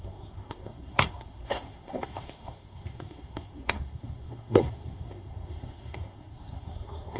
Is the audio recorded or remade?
remade